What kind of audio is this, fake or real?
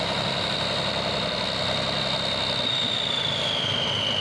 real